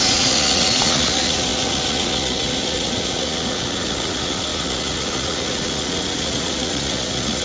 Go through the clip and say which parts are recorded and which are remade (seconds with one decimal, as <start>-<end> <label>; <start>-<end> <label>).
0.0-7.4 remade